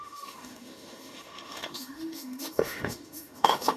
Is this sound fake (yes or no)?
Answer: yes